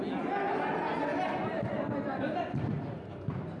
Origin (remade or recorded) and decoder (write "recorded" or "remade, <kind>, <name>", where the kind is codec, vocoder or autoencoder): recorded